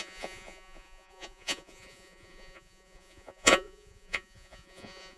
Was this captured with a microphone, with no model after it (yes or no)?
no